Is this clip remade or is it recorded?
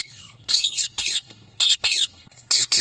remade